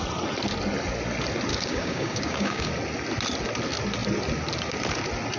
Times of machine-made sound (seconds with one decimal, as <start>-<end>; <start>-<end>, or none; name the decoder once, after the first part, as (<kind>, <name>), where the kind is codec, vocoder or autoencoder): 1.5-2.7 (codec, DAC)